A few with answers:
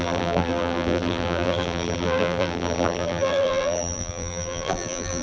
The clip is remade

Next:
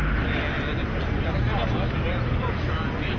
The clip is recorded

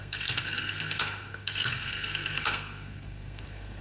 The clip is remade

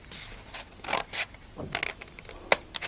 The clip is recorded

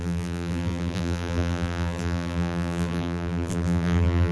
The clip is remade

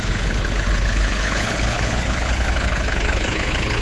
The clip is remade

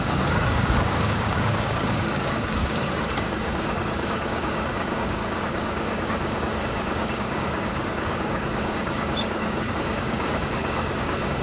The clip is remade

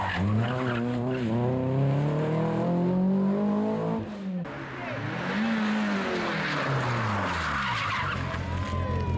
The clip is recorded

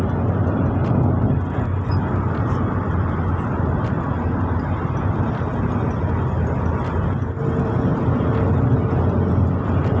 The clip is recorded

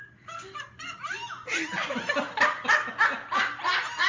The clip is recorded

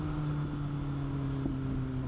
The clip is recorded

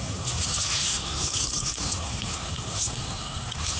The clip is remade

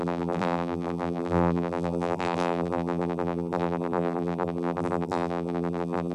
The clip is remade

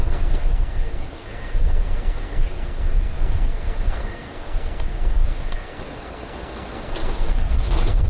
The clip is remade